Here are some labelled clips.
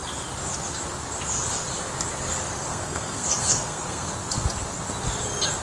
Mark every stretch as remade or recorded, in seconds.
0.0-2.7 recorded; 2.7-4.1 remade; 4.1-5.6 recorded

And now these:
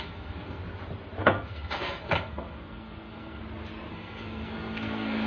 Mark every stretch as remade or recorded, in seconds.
0.0-0.6 remade; 0.6-1.2 recorded; 1.2-3.4 remade; 3.4-3.9 recorded; 3.9-5.3 remade

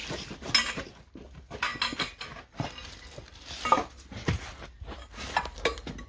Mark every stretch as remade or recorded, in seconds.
0.0-6.1 recorded